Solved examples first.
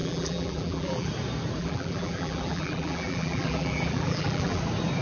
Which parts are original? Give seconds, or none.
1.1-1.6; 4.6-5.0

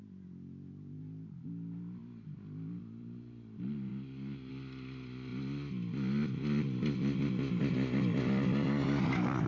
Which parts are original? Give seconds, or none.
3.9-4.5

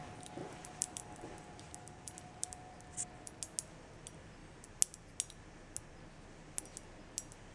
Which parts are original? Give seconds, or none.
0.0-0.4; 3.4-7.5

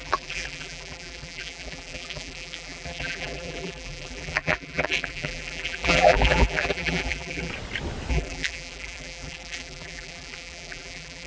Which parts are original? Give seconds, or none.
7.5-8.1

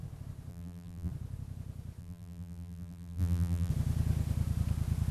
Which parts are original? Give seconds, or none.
0.0-0.5; 1.1-2.0; 3.7-5.1